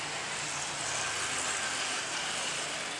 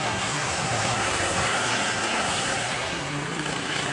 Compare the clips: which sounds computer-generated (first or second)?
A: second